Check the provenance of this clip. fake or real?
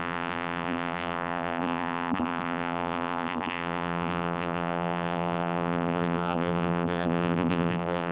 fake